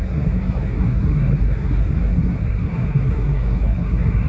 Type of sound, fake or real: fake